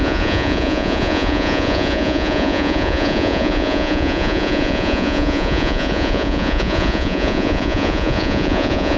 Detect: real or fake fake